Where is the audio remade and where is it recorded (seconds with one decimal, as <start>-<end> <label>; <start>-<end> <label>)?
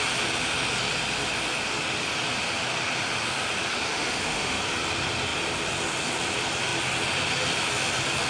0.0-3.9 recorded; 3.9-4.6 remade; 4.6-8.3 recorded